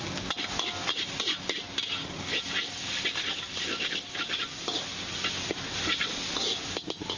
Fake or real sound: real